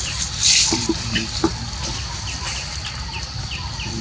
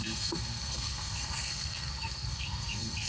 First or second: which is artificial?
second